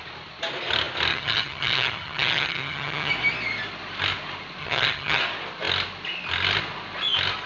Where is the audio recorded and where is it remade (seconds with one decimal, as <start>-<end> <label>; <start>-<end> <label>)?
0.0-1.1 recorded; 1.1-3.1 remade; 3.1-4.6 recorded; 4.6-5.2 remade; 5.2-7.5 recorded